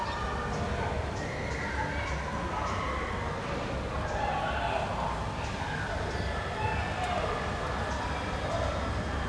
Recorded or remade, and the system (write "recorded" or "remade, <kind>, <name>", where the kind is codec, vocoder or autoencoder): recorded